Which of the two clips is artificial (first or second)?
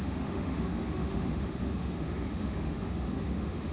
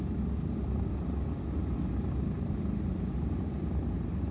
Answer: first